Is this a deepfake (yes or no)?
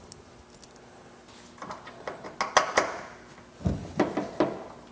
no